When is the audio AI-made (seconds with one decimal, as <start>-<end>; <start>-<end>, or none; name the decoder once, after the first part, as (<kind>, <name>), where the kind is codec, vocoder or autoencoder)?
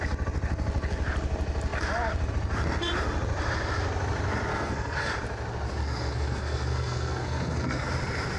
4.5-5.1 (codec, SNAC); 5.8-7.9